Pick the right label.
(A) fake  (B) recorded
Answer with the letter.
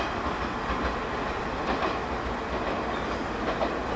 B